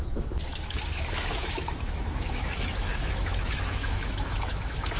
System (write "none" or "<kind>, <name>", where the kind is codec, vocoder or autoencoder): autoencoder, DAC-VAE